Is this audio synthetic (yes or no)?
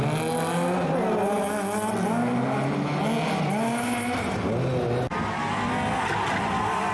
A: no